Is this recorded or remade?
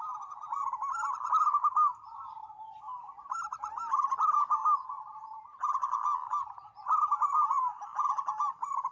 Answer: recorded